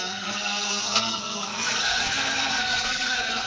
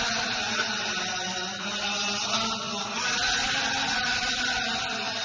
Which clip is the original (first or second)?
second